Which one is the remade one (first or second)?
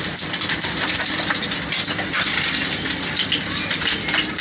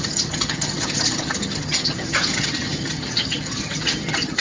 second